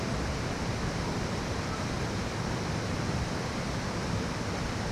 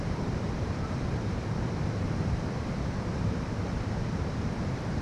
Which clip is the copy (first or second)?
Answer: second